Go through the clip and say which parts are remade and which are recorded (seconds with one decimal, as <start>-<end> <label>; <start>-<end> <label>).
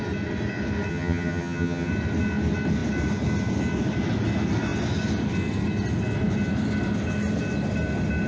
0.0-0.9 recorded; 0.9-1.9 remade; 1.9-8.3 recorded